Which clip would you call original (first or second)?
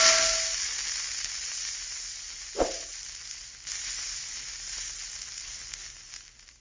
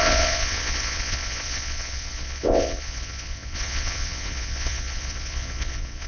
first